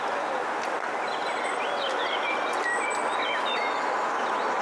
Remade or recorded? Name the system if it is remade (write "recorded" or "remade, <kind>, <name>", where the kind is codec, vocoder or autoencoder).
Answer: recorded